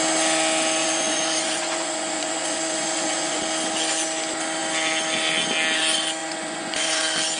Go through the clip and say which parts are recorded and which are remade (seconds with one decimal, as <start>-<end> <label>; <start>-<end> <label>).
0.0-0.8 recorded; 0.8-3.4 remade; 3.4-6.2 recorded; 6.2-7.0 remade; 7.0-7.4 recorded